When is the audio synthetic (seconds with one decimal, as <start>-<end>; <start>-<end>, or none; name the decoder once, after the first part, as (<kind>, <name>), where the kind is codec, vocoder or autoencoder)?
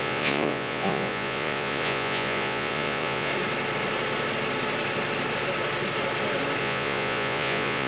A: 0.0-3.3 (vocoder, Vocos); 6.6-7.9